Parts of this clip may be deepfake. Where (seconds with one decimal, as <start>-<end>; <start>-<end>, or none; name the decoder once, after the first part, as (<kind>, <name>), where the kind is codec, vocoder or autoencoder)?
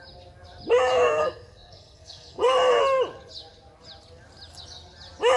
0.9-2.8 (codec, SNAC)